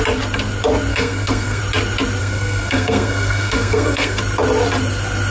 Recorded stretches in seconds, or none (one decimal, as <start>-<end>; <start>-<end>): 0.0-0.9; 1.6-2.2; 4.2-5.3